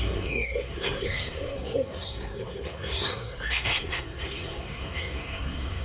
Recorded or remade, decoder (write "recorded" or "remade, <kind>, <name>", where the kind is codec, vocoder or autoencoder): remade, codec, SNAC